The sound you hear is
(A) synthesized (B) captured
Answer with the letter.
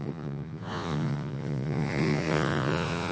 A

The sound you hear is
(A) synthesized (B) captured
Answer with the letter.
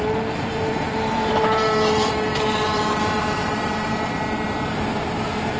A